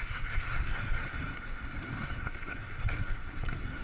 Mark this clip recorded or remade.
remade